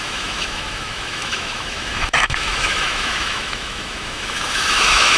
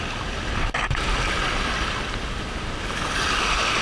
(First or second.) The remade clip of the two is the first